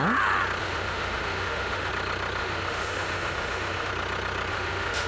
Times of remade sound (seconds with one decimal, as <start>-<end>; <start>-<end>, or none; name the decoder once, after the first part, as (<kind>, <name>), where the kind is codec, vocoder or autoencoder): 0.6-1.9 (autoencoder, DAC-VAE); 2.4-3.9; 4.5-5.1